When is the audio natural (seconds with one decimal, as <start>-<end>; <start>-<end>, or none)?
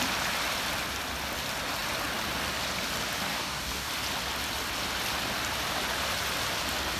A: 0.0-3.3; 3.9-7.0